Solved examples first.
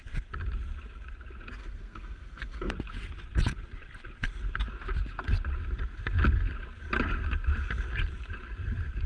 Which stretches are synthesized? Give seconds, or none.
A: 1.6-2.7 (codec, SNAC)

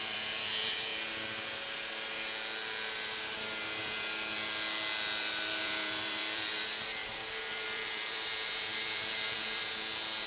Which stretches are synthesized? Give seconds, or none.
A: 0.0-0.9 (vocoder, BigVGAN v2); 5.2-7.0; 7.5-9.6

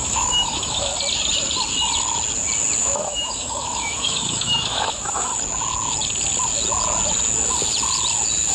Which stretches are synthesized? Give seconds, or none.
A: 0.0-0.9 (autoencoder, DAC-VAE); 2.8-5.3

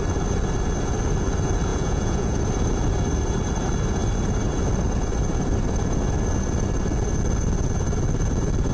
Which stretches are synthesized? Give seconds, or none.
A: 1.7-2.4 (vocoder, Vocos)

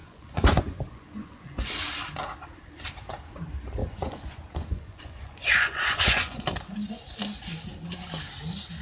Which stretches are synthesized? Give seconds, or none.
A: 0.0-1.7 (vocoder, Vocos); 3.8-6.4

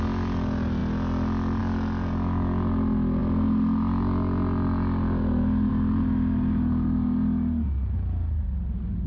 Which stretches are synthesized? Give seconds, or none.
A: none

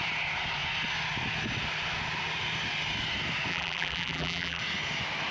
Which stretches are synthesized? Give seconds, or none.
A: 3.5-4.6 (vocoder, BigVGAN v2)